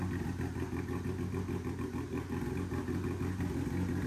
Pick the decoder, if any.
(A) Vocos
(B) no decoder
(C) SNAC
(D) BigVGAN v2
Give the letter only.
B